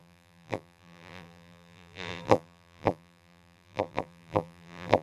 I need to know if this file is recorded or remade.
remade